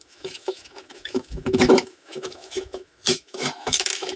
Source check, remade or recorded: remade